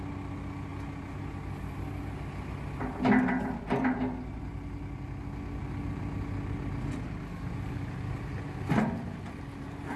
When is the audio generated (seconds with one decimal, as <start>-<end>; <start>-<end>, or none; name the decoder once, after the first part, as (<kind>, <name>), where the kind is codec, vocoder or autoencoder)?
none